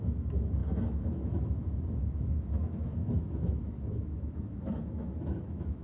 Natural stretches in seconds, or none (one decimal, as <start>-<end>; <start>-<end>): none